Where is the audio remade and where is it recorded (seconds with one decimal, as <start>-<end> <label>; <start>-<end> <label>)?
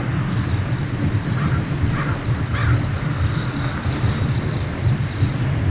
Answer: 0.0-5.7 recorded